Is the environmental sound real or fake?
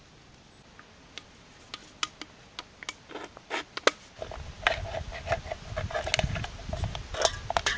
real